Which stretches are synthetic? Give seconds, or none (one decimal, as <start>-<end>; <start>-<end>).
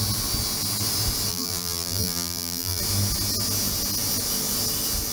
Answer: 1.3-2.8